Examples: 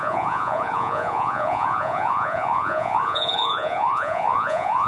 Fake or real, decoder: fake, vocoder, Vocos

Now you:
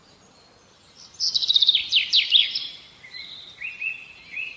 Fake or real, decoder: real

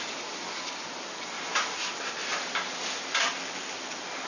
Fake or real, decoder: real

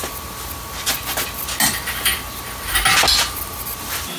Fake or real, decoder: real